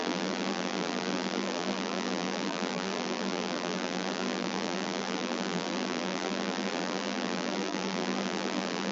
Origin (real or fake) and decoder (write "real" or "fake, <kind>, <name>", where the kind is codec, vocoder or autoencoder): fake, vocoder, BigVGAN v2